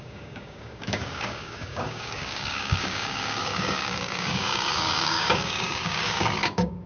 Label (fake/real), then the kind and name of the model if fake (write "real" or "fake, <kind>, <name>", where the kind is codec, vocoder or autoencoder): fake, codec, DAC